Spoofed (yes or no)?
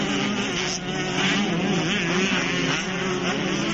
no